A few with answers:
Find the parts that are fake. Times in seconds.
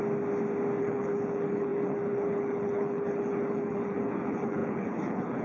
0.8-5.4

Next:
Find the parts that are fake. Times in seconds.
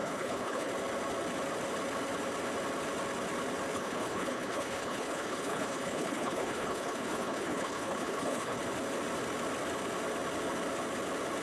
0.0-0.7; 3.7-8.6